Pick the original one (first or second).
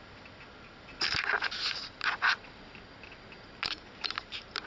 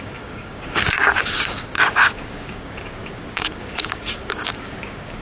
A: first